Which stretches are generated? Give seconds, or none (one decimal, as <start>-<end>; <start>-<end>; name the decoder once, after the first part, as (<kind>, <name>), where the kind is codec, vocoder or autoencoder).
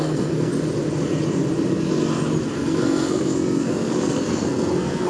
0.0-0.5 (codec, SNAC); 2.5-5.1